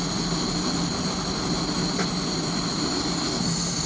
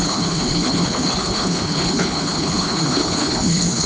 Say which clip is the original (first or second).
first